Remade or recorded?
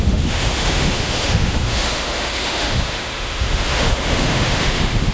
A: remade